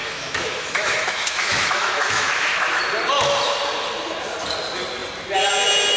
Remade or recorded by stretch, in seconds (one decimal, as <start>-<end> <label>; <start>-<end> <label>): 0.0-2.8 remade; 2.8-6.0 recorded